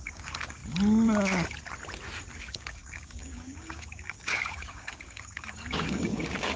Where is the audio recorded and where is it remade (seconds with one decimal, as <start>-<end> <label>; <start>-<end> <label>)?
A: 0.0-0.6 remade; 0.6-2.4 recorded; 2.4-6.6 remade